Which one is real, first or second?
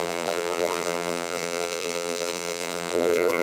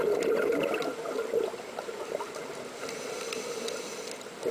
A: second